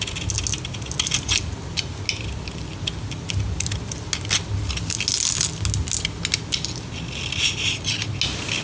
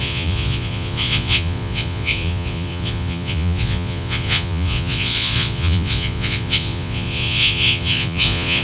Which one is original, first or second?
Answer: first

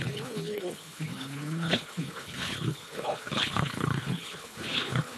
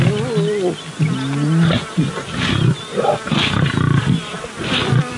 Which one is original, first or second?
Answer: second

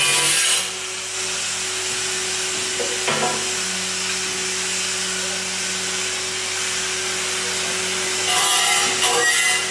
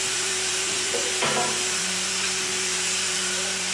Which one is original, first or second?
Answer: first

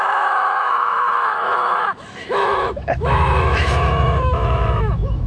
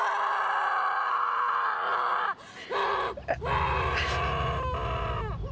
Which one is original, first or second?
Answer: second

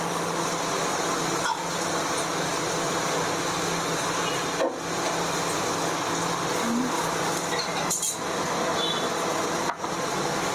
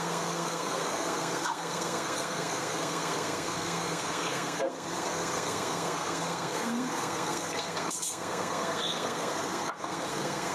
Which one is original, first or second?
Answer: first